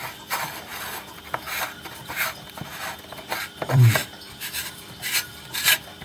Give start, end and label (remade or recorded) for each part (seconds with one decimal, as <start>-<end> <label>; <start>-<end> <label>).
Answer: 0.0-0.7 remade; 0.7-2.1 recorded; 2.1-2.7 remade; 2.7-3.4 recorded; 3.4-6.0 remade